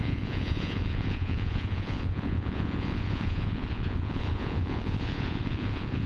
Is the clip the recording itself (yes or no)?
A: no